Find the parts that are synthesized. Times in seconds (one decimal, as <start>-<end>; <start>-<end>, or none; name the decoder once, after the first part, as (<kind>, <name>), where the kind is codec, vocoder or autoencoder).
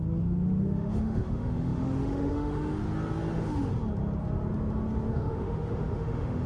0.0-2.8 (autoencoder, DAC-VAE); 3.3-3.7; 5.1-6.5